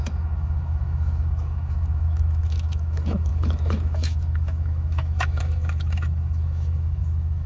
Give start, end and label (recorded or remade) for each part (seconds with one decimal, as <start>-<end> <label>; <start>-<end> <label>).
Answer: 0.0-7.5 remade